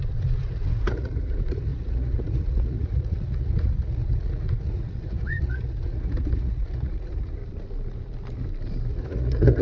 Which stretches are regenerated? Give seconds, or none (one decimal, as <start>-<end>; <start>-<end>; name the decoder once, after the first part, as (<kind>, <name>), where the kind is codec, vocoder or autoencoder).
0.0-7.4 (vocoder, Vocos); 8.9-9.6